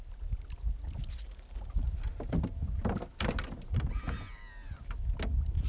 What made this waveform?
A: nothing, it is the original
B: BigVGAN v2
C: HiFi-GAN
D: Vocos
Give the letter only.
A